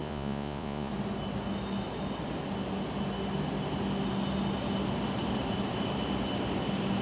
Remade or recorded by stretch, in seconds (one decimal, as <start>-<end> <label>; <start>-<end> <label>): 0.0-0.9 remade; 0.9-7.0 recorded